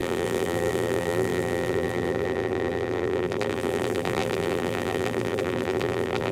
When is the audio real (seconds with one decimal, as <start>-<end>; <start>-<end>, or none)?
none